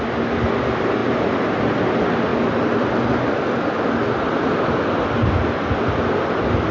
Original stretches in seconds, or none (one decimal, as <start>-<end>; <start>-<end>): 0.0-6.7